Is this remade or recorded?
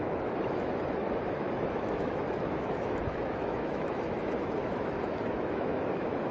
remade